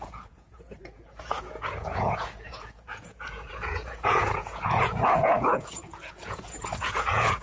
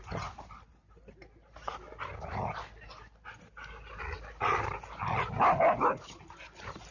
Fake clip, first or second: first